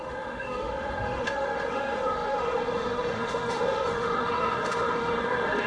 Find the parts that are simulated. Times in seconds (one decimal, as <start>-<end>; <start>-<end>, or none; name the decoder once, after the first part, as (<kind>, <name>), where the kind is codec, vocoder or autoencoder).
0.0-5.7 (autoencoder, DAC-VAE)